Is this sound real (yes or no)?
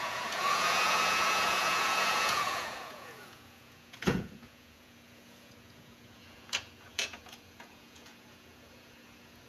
no